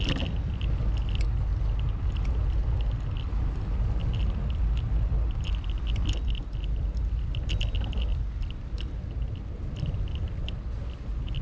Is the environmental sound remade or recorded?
recorded